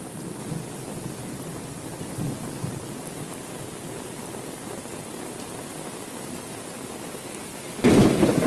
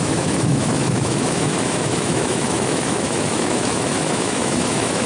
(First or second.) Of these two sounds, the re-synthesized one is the second